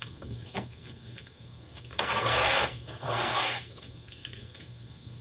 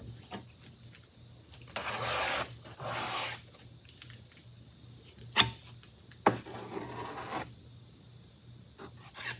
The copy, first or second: first